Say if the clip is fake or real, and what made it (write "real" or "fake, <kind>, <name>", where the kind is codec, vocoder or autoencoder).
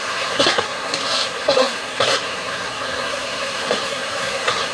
fake, codec, SNAC